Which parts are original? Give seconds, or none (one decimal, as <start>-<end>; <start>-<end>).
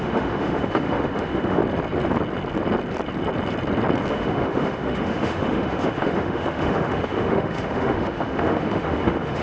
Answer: 1.6-4.1